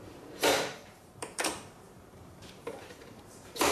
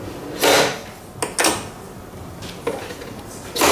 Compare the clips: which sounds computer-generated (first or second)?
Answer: first